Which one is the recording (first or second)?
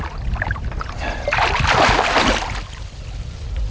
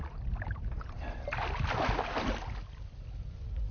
second